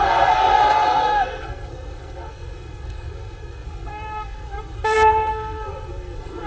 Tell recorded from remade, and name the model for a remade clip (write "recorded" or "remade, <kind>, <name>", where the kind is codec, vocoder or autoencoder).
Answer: remade, codec, SNAC